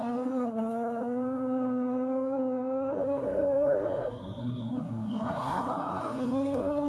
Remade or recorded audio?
remade